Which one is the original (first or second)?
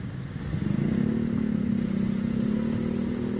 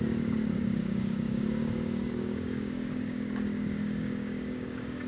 first